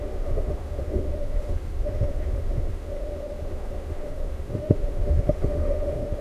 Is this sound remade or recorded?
remade